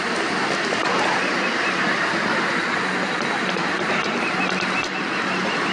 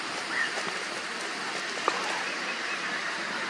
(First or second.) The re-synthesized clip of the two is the first